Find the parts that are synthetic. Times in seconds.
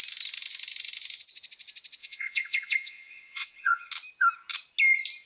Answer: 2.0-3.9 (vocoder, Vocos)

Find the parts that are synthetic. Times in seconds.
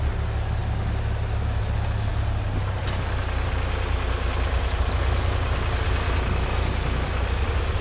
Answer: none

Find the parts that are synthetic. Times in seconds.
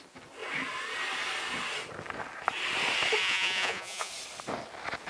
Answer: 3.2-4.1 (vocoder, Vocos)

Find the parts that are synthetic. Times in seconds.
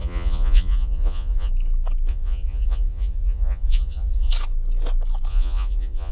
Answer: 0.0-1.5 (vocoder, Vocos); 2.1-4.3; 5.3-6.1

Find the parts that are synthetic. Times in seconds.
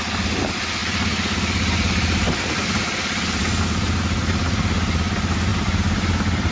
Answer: none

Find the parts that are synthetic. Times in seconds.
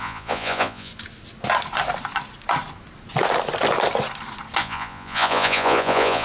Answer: 0.0-0.9 (vocoder, Vocos); 4.6-6.2